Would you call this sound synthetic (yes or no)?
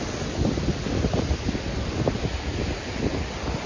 no